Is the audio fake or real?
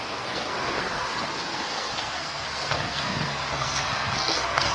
fake